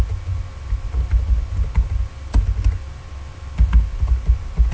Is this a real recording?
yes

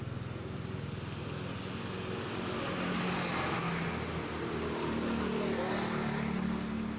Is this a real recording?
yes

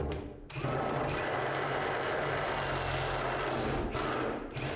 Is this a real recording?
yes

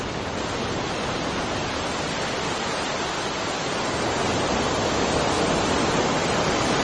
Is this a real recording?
yes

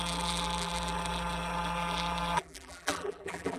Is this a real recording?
no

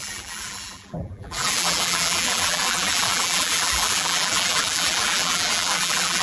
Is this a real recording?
no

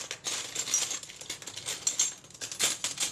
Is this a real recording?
yes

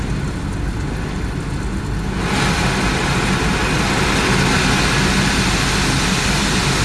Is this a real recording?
yes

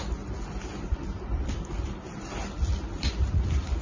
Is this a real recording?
yes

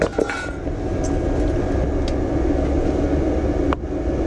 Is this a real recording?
yes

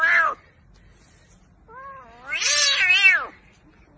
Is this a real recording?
yes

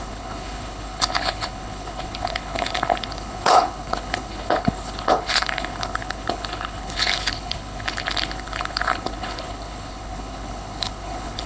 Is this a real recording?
no